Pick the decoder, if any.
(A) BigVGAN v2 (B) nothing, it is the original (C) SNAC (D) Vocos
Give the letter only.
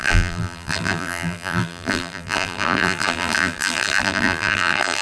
A